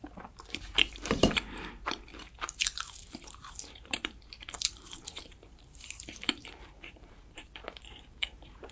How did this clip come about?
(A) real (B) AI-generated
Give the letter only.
B